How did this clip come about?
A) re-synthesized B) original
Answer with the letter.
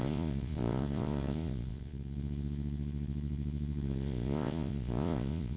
A